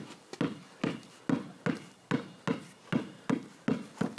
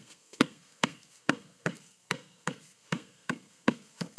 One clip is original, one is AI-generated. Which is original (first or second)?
first